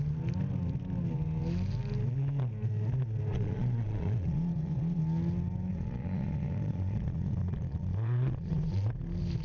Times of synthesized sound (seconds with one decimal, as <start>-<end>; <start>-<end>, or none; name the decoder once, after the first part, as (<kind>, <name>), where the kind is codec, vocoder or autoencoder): 3.3-5.0 (vocoder, Vocos); 5.7-8.9